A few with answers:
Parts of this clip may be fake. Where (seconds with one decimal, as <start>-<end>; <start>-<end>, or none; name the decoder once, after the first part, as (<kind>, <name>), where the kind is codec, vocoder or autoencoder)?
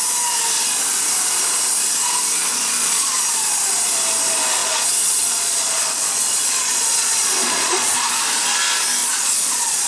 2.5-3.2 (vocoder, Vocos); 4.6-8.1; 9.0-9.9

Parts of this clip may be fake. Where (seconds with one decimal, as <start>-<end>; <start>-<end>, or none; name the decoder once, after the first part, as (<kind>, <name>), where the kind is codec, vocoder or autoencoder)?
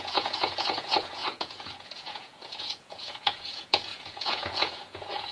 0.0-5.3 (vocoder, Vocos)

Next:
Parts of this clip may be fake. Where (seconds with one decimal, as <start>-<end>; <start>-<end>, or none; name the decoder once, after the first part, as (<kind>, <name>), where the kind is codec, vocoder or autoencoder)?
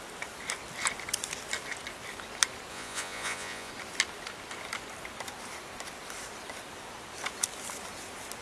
2.7-3.7 (vocoder, Vocos)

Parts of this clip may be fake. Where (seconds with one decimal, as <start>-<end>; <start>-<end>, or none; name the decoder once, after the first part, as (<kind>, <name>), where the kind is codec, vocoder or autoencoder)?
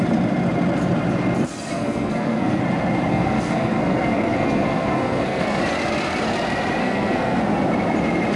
1.7-2.6 (codec, SNAC); 3.1-5.6; 6.8-7.4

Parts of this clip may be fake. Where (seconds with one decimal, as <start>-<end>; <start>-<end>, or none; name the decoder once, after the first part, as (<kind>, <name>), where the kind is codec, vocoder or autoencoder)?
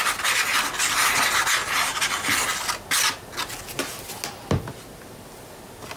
none